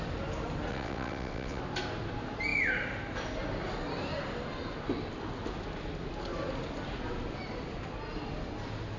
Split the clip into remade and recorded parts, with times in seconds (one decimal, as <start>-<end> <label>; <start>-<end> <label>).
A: 0.0-0.7 recorded; 0.7-1.6 remade; 1.6-9.0 recorded